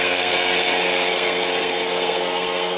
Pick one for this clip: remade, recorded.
remade